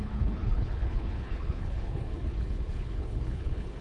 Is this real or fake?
fake